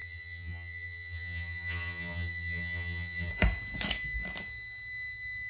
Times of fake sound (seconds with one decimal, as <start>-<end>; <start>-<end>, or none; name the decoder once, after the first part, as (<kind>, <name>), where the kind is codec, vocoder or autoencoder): 0.0-3.3 (vocoder, HiFi-GAN)